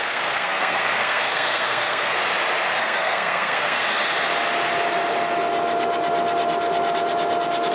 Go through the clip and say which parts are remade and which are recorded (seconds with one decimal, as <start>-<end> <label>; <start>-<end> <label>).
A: 0.0-2.1 remade; 2.1-2.8 recorded; 2.8-3.8 remade; 3.8-7.7 recorded